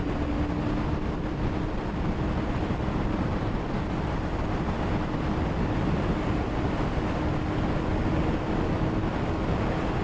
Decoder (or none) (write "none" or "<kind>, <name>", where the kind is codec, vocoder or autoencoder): none